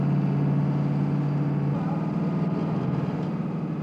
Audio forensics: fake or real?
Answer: real